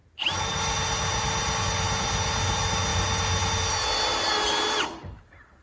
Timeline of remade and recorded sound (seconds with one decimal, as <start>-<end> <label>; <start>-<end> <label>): 0.0-5.6 recorded

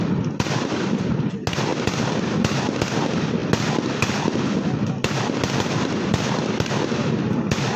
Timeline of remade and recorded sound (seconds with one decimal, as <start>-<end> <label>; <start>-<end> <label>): 0.0-7.8 recorded